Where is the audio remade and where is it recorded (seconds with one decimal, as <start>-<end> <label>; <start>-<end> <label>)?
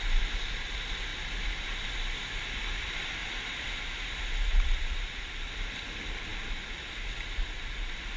0.0-8.2 recorded